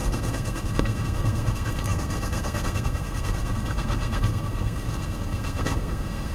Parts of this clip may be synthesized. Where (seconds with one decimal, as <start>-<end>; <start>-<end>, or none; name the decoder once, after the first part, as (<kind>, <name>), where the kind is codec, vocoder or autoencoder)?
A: 0.0-6.3 (codec, SNAC)